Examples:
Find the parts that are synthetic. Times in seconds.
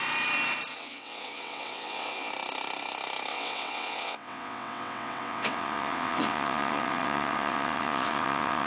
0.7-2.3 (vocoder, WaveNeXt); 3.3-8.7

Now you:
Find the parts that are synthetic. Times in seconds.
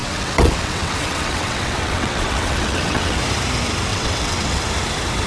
0.0-3.2 (vocoder, WaveNeXt); 3.9-4.6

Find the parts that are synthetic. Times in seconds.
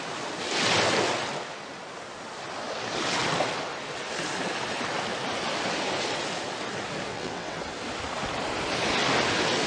7.1-7.6 (vocoder, WaveNeXt)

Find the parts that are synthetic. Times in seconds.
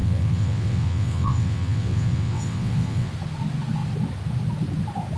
0.0-3.1 (vocoder, WaveNeXt)